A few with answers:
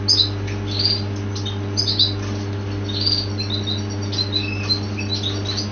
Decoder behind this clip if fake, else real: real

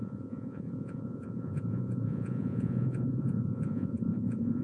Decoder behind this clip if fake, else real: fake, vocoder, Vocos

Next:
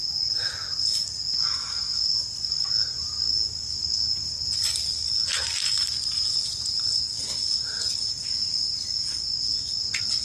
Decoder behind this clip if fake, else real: real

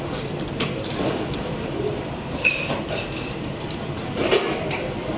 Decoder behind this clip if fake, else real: fake, vocoder, BigVGAN v2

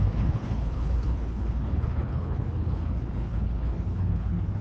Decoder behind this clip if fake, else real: fake, codec, HILCodec